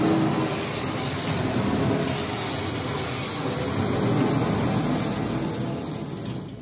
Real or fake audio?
real